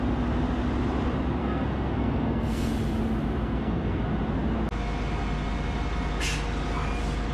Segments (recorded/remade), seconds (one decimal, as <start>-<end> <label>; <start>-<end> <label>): 0.0-1.4 recorded; 1.4-2.7 remade; 2.7-3.4 recorded; 3.4-4.0 remade; 4.0-7.3 recorded